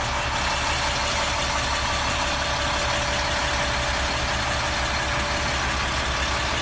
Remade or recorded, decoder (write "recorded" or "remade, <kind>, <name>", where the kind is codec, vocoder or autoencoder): recorded